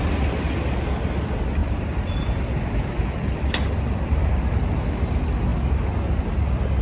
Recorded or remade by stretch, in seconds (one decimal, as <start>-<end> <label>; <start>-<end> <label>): 0.0-1.6 recorded; 1.6-2.1 remade; 2.1-3.2 recorded; 3.2-4.7 remade; 4.7-6.8 recorded